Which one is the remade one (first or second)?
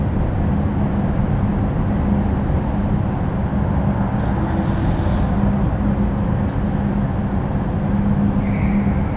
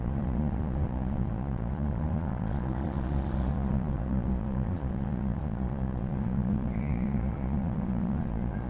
second